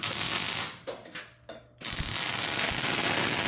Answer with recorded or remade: remade